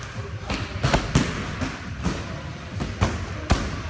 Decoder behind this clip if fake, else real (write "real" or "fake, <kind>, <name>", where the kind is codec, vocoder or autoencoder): real